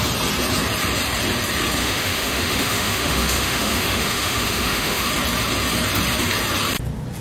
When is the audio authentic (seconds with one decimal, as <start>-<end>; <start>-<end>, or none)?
0.0-1.8; 5.1-7.2